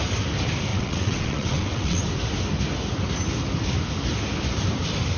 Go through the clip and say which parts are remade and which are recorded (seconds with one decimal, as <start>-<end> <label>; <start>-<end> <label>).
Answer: 0.0-0.7 recorded; 0.7-2.0 remade; 2.0-5.2 recorded